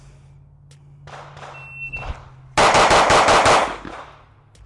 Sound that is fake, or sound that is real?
real